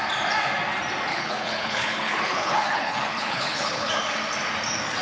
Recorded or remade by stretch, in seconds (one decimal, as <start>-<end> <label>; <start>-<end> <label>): 0.0-1.1 recorded; 1.1-3.9 remade; 3.9-5.0 recorded